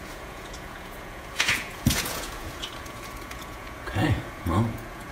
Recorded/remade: remade